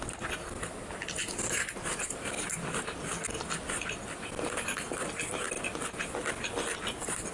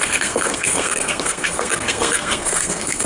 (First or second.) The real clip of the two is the first